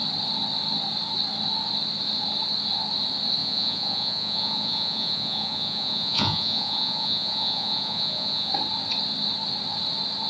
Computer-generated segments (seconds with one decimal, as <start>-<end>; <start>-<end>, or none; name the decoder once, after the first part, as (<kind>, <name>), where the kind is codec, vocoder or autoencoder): 3.4-8.5 (vocoder, Vocos)